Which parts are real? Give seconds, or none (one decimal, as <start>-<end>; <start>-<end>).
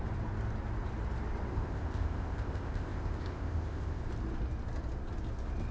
0.0-1.5; 4.0-5.7